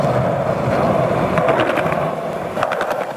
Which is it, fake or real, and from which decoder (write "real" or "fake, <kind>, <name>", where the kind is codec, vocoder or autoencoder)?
real